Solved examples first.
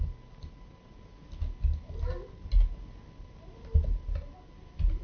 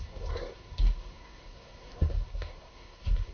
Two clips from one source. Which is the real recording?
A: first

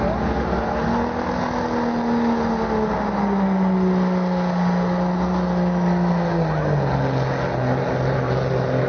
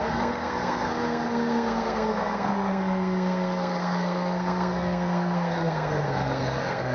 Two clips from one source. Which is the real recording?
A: first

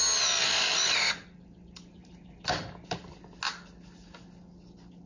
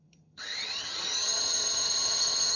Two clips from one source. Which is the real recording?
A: first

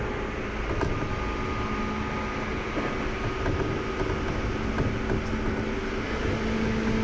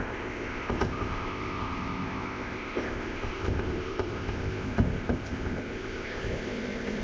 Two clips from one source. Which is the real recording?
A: first